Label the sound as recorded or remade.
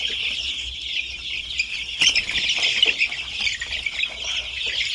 recorded